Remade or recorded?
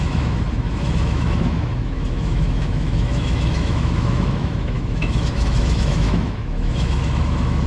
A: remade